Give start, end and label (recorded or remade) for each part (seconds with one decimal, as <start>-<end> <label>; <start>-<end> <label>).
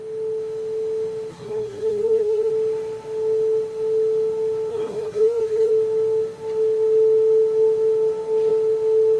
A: 0.0-1.3 recorded; 1.3-2.5 remade; 2.5-4.7 recorded; 4.7-5.7 remade; 5.7-9.2 recorded